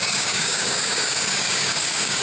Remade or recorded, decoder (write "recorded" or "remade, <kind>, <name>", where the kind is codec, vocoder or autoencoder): remade, codec, DAC